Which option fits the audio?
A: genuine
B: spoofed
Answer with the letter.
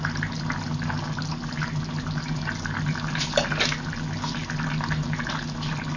A